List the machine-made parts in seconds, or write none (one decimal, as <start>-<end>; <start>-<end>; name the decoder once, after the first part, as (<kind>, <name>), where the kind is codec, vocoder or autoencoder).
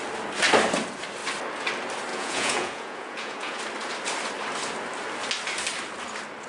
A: 2.1-3.6 (vocoder, Vocos)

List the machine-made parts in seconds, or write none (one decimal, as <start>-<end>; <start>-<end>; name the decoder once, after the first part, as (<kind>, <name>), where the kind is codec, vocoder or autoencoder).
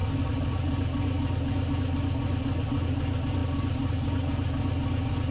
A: none